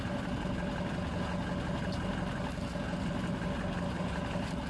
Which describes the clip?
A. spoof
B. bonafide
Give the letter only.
B